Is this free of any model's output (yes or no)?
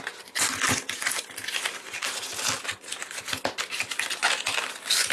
yes